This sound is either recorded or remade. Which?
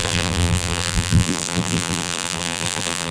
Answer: remade